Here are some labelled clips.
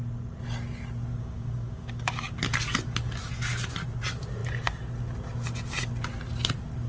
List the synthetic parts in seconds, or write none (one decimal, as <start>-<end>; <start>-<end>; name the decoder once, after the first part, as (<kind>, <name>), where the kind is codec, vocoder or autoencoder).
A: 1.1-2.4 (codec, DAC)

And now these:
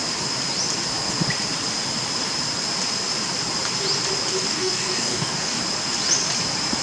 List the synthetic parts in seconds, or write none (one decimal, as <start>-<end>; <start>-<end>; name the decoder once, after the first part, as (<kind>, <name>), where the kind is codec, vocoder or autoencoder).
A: 4.5-5.6 (codec, DAC)

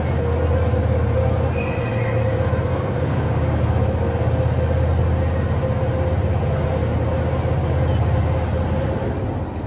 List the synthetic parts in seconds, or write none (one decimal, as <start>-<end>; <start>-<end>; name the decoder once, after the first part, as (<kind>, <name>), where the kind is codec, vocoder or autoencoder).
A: 2.7-3.6 (codec, DAC)

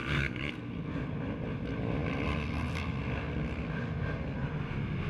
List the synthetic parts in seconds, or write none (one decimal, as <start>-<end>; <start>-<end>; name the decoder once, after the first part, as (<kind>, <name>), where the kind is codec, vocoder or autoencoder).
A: 0.0-0.5 (codec, DAC)

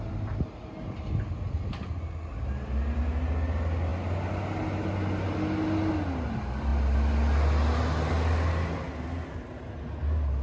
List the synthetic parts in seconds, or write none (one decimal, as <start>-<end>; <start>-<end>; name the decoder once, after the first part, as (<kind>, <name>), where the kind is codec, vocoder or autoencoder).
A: none